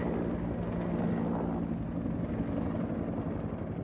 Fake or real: real